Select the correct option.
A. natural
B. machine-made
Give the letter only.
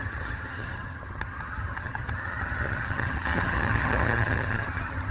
B